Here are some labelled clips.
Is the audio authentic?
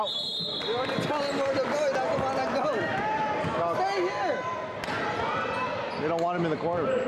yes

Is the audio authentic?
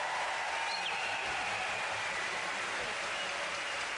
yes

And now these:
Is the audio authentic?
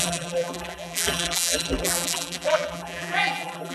no